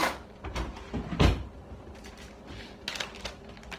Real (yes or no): yes